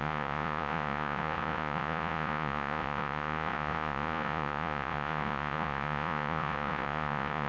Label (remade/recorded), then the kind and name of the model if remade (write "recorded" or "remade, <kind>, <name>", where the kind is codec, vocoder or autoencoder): remade, vocoder, Vocos